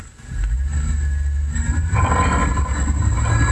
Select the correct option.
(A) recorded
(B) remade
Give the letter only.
A